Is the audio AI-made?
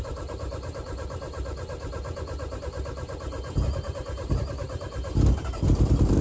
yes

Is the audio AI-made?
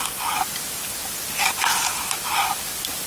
yes